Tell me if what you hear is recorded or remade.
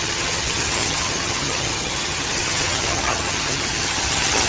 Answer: remade